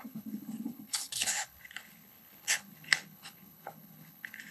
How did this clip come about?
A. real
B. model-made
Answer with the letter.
B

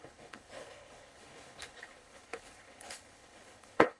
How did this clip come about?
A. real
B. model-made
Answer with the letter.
B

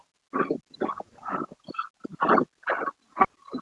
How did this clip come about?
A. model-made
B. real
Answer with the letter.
B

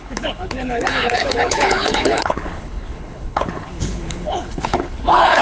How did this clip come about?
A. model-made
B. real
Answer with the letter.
A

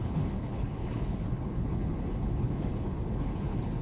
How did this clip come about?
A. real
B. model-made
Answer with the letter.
B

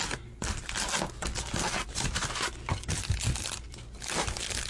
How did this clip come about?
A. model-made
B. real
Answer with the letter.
B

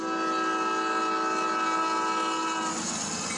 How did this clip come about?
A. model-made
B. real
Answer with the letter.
B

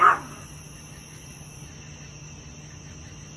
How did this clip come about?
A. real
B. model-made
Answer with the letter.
A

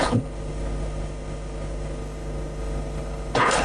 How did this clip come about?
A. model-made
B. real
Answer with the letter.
A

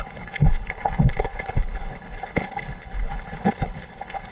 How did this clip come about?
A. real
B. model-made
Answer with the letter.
B